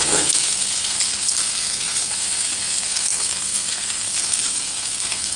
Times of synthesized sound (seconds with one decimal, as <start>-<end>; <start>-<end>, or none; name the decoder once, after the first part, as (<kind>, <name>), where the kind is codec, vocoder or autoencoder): 0.0-5.4 (codec, SNAC)